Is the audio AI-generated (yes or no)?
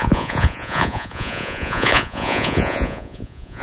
yes